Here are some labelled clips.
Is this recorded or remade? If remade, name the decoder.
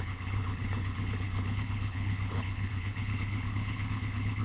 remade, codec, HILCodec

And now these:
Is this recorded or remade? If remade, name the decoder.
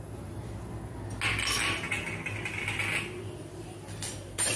recorded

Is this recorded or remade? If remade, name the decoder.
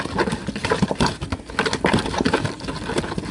recorded